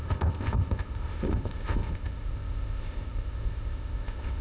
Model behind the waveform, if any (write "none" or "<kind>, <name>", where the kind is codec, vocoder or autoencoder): codec, ZipCodec